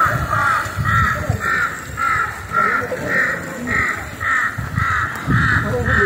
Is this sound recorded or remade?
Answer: recorded